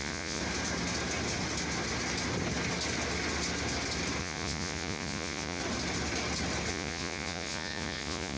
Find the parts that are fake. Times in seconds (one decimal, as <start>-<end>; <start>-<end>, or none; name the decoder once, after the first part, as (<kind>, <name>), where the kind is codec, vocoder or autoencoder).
0.0-0.4 (vocoder, Vocos); 4.2-5.6; 6.7-8.4